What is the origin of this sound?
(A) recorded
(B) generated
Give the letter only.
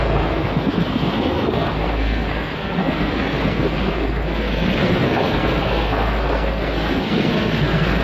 B